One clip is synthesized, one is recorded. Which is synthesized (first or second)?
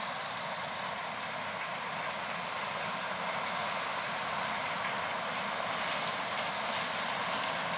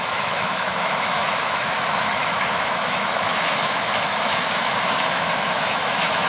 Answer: second